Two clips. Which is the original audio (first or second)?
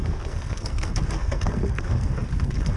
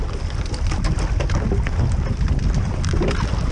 second